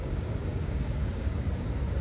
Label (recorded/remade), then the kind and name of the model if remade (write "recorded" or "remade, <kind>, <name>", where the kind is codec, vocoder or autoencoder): remade, codec, DAC